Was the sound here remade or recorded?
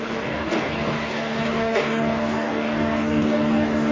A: remade